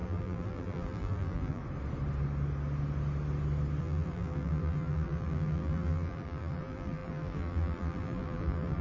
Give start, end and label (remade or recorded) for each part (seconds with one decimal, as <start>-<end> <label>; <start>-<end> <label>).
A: 0.0-1.6 remade; 1.6-3.8 recorded; 3.8-8.8 remade